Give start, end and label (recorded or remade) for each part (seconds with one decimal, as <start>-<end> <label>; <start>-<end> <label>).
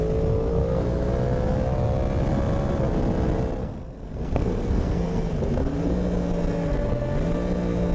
0.0-0.5 recorded; 0.5-1.1 remade; 1.1-3.6 recorded; 3.6-5.3 remade; 5.3-7.9 recorded